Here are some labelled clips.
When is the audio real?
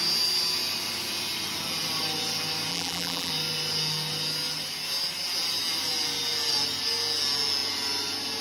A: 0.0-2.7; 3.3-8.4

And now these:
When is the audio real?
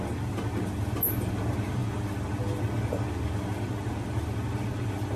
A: 0.0-5.2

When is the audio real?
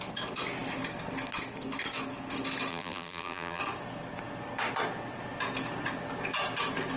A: 0.0-2.7; 3.6-7.0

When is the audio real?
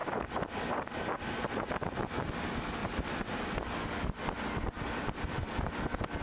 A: 0.0-2.8; 3.5-6.2